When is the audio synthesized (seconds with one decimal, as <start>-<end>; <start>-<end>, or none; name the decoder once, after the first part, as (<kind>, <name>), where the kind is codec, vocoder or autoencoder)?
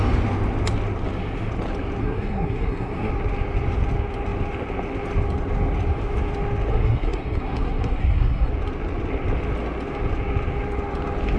2.0-3.1 (codec, SNAC); 6.7-8.5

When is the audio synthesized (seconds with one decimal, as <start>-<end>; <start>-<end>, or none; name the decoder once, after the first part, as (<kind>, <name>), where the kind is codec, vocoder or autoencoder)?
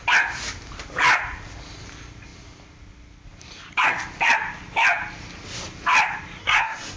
6.4-7.0 (codec, SNAC)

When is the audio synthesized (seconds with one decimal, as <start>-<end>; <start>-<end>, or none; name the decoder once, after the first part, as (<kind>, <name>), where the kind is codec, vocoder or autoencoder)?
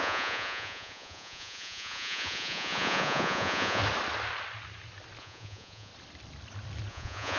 0.0-3.8 (vocoder, Vocos); 5.2-5.9; 6.9-7.4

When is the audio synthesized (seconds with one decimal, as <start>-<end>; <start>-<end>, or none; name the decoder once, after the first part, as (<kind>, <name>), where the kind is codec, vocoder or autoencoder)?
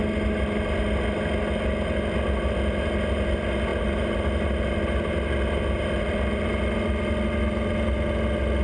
none